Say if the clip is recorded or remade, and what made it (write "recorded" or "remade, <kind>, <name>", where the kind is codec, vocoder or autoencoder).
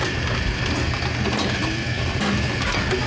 recorded